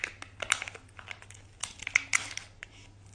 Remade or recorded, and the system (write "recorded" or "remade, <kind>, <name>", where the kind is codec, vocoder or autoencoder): recorded